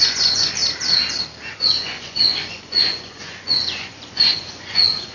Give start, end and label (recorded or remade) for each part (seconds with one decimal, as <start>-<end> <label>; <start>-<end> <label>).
0.0-0.6 remade; 0.6-1.5 recorded; 1.5-5.1 remade